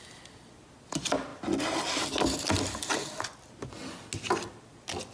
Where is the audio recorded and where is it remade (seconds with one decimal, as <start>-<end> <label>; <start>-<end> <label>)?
0.0-5.1 recorded